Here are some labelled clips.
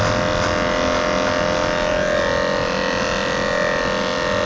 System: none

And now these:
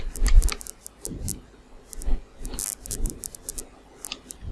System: none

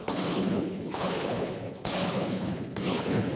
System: codec, HILCodec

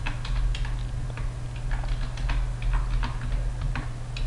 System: none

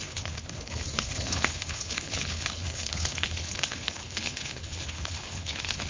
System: codec, HILCodec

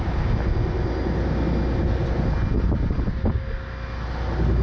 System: none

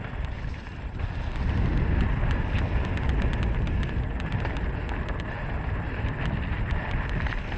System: none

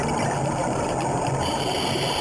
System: none